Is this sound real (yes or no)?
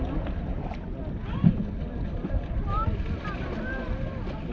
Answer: yes